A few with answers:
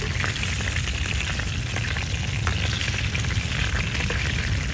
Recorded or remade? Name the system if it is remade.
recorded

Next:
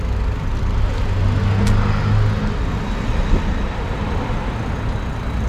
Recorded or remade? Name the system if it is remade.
recorded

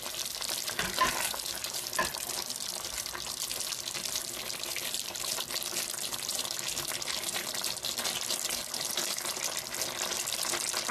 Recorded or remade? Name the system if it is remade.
recorded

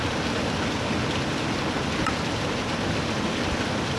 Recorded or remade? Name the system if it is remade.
recorded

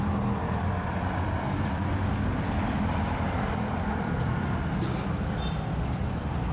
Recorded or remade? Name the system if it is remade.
remade, vocoder, BigVGAN v2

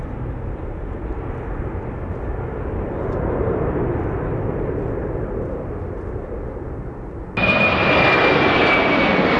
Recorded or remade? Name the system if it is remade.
recorded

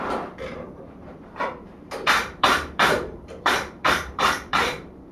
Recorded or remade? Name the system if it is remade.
remade, vocoder, BigVGAN v2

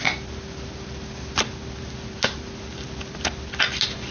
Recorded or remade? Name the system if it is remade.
recorded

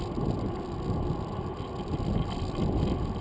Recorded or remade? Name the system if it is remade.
recorded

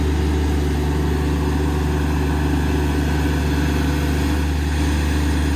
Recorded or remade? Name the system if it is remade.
recorded